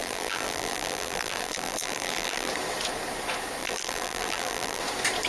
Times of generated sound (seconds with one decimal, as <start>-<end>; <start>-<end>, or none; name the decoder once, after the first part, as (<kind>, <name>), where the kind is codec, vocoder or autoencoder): 0.0-2.5 (vocoder, BigVGAN v2); 3.6-4.8